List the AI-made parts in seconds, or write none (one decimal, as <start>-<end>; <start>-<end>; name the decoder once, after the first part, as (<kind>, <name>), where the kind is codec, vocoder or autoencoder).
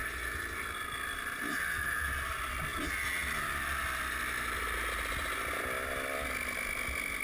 none